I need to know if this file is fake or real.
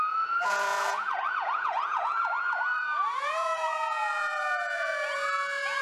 fake